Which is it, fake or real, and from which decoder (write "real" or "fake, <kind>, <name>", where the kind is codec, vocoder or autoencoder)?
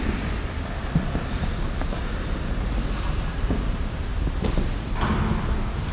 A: real